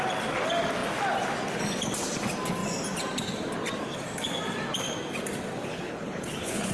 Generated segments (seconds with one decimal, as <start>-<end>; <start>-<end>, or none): 5.6-6.7